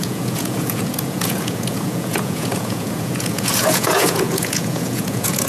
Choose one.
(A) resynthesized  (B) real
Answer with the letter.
A